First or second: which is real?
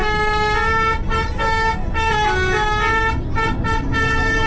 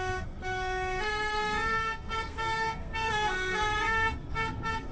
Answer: first